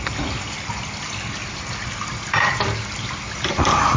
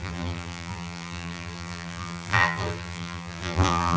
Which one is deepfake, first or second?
second